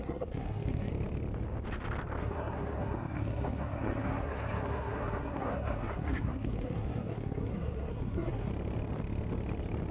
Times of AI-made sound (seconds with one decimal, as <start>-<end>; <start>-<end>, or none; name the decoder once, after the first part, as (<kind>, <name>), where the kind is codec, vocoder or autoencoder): 0.0-0.9 (codec, SNAC); 2.2-8.5